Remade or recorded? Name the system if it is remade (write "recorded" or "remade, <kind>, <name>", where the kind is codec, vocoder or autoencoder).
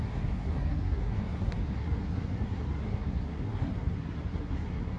remade, codec, SNAC